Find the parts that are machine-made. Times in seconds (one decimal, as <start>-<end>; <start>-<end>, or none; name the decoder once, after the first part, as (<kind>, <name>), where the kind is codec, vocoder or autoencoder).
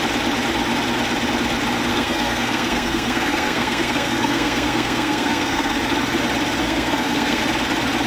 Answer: 1.9-5.8 (codec, SNAC); 6.6-7.4